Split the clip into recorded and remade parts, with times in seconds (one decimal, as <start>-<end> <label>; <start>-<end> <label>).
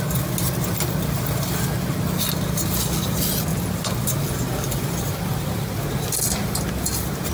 0.0-7.3 recorded